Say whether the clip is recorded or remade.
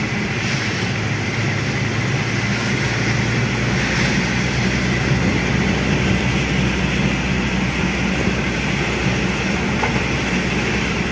recorded